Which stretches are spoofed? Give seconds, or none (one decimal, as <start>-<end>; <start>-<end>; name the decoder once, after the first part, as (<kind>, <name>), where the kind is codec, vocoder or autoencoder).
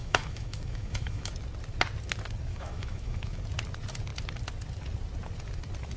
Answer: 0.0-1.3 (autoencoder, DAC-VAE); 2.5-3.4